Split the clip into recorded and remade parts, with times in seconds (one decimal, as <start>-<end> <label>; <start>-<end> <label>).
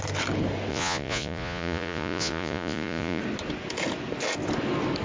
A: 0.0-0.7 recorded; 0.7-3.2 remade; 3.2-5.0 recorded